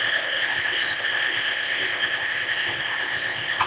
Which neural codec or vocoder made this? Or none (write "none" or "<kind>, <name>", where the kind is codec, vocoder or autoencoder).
codec, ZipCodec